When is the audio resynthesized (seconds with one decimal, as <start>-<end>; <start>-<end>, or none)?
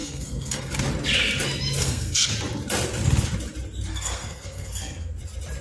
0.0-0.7; 1.8-2.3; 3.9-5.1